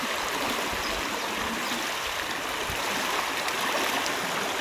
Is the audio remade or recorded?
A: recorded